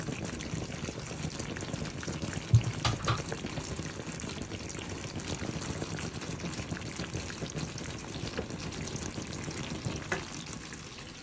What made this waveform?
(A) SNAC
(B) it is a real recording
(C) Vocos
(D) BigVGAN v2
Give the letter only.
D